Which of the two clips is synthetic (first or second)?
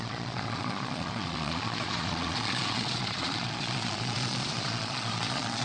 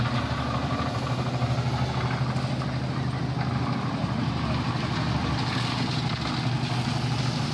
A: first